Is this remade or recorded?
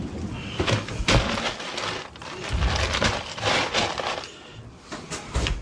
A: recorded